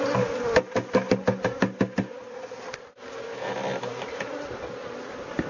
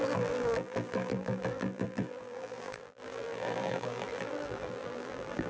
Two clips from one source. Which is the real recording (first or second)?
first